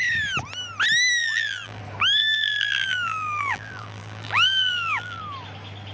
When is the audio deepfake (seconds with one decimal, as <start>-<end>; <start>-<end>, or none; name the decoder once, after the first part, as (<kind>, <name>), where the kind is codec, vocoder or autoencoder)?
1.2-1.8 (vocoder, BigVGAN v2); 2.2-5.2